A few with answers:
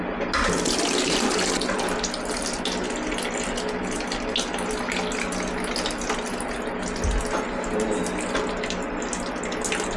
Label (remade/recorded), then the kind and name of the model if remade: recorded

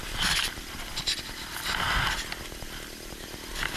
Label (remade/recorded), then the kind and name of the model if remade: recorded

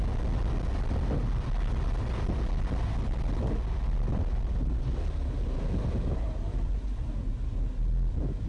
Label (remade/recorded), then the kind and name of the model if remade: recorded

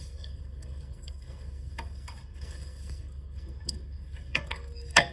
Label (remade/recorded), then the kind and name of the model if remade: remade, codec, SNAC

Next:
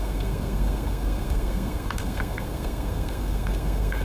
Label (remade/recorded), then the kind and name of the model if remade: remade, codec, SNAC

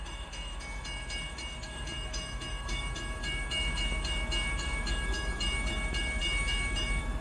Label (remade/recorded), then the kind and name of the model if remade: remade, autoencoder, DAC-VAE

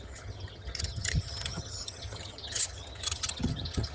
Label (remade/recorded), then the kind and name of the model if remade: remade, vocoder, HiFi-GAN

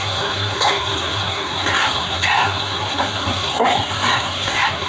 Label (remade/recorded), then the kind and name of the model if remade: remade, codec, SNAC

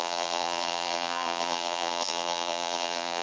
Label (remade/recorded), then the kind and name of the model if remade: remade, vocoder, BigVGAN v2